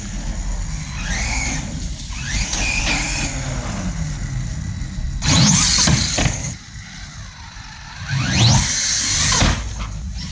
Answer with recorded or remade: recorded